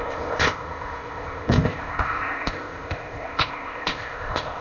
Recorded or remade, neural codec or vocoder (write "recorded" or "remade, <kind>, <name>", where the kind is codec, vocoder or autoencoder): remade, codec, ZipCodec